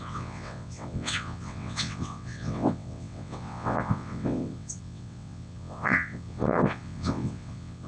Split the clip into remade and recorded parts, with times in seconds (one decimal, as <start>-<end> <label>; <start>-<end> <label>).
0.0-7.9 remade

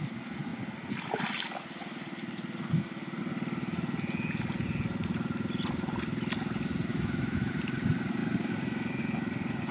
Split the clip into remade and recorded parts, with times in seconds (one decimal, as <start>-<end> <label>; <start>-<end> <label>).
0.0-6.9 recorded; 6.9-7.5 remade; 7.5-9.7 recorded